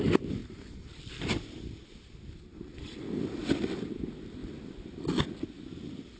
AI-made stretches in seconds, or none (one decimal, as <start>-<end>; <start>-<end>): 0.4-1.1

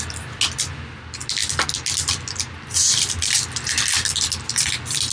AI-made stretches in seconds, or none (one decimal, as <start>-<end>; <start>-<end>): none

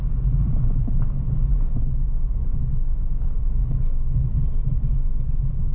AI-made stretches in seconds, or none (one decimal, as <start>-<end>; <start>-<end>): 0.4-1.8

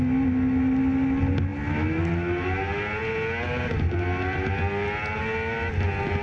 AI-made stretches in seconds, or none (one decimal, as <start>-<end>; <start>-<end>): none

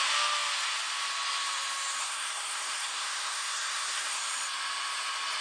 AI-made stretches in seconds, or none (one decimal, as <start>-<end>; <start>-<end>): 2.0-4.2

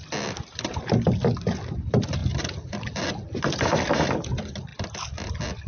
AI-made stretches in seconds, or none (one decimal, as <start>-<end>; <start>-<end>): none

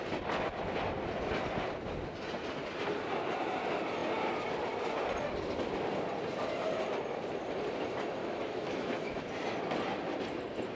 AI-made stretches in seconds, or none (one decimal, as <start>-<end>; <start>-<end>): 8.2-9.3